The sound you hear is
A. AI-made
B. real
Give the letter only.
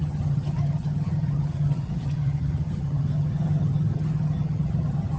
A